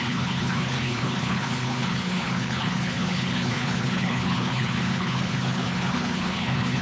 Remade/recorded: remade